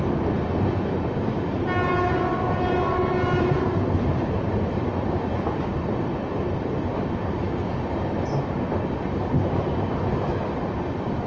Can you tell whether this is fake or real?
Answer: real